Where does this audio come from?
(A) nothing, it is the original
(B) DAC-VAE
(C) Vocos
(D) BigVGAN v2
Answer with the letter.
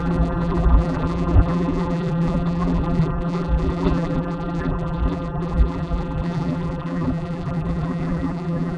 D